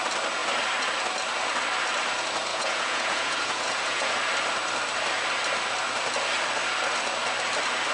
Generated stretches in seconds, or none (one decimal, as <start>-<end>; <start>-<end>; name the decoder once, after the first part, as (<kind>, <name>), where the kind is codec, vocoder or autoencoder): 2.5-4.1 (vocoder, Vocos)